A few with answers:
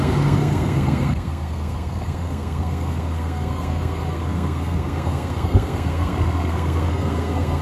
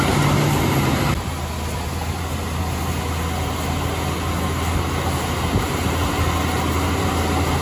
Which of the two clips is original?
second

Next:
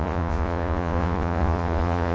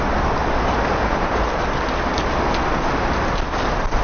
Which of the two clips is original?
second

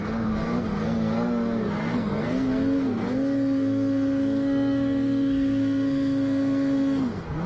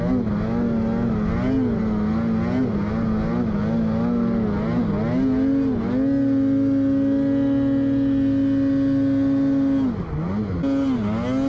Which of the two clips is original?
second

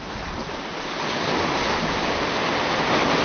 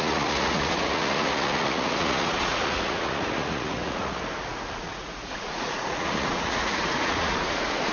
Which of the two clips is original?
first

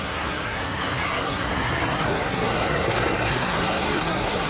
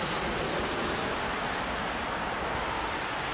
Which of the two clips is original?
second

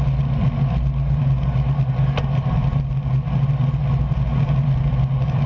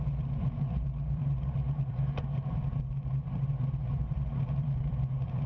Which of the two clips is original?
first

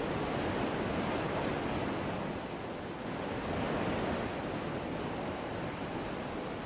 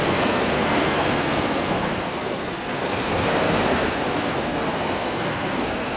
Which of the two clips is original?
first